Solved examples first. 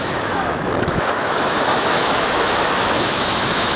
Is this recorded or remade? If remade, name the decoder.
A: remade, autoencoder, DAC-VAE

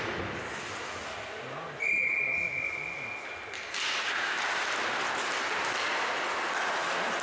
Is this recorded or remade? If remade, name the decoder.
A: recorded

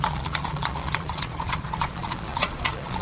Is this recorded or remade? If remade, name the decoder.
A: remade, vocoder, Vocos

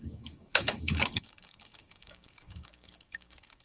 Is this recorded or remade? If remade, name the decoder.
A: remade, codec, DAC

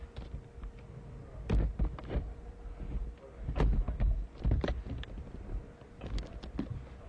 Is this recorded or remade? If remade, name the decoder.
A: recorded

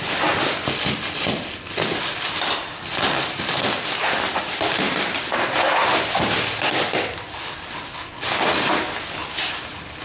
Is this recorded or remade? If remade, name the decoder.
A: recorded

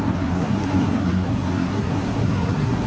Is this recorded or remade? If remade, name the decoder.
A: remade, codec, SNAC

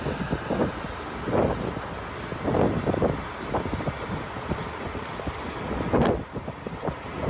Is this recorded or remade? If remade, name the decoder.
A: recorded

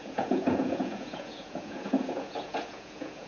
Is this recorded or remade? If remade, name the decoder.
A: remade, vocoder, Vocos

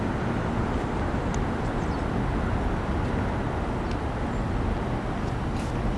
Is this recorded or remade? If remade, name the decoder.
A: recorded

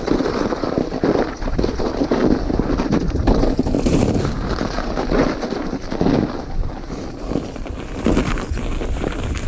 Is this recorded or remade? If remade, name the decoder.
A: recorded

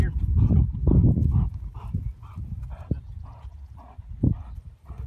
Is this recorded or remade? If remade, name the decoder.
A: recorded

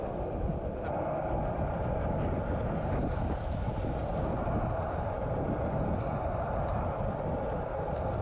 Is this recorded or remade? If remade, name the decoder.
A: recorded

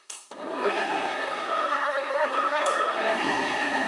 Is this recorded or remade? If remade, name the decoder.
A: remade, codec, SNAC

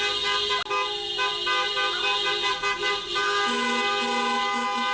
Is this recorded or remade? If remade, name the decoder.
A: recorded